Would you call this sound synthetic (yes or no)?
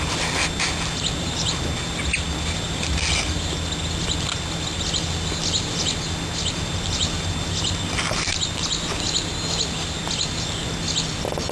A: no